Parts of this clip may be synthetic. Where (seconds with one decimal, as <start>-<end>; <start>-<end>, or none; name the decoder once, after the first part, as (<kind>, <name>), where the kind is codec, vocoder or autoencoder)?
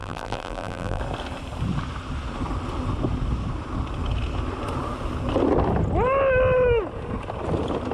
0.0-1.0 (vocoder, BigVGAN v2)